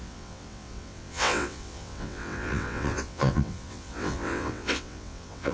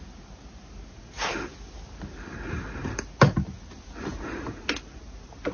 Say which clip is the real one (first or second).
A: second